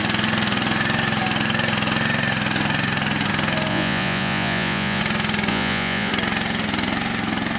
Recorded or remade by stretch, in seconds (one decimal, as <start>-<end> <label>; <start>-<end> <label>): 0.0-3.7 recorded; 3.7-5.0 remade; 5.0-5.5 recorded; 5.5-6.1 remade; 6.1-7.6 recorded